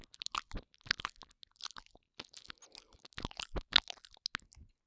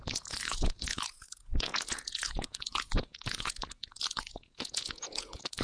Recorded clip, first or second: first